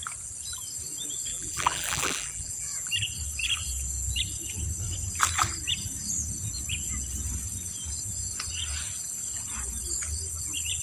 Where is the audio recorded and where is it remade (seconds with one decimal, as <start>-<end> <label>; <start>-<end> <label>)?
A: 0.0-1.3 recorded; 1.3-2.9 remade; 2.9-10.8 recorded